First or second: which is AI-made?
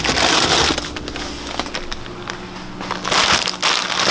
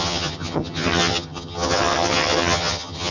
second